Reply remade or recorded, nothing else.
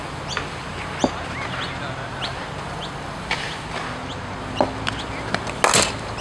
recorded